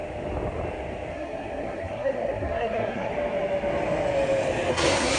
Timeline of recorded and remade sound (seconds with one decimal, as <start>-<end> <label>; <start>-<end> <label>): 0.0-1.1 recorded; 1.1-3.1 remade; 3.1-4.7 recorded; 4.7-5.2 remade

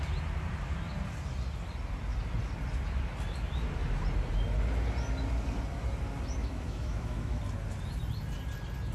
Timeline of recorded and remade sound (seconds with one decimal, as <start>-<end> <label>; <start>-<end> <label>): 0.0-6.4 recorded; 6.4-7.4 remade; 7.4-8.9 recorded

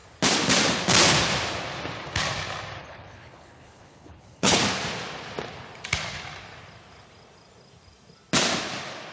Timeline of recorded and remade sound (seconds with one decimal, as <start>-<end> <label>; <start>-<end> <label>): 0.0-2.8 recorded; 2.8-4.6 remade; 4.6-9.1 recorded